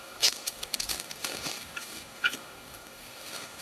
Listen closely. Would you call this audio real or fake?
fake